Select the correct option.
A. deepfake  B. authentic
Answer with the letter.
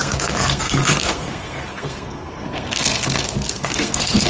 A